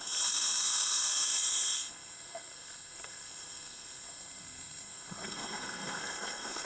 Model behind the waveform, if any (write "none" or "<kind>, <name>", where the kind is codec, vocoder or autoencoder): codec, SNAC